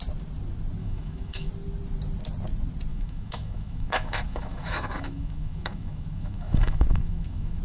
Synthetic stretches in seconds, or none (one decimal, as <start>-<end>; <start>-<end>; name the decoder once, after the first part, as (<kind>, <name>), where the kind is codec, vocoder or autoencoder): 0.8-1.5 (autoencoder, DAC-VAE); 2.9-7.6